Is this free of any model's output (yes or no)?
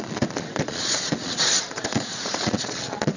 no